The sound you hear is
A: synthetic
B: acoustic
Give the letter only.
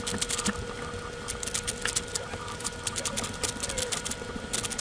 B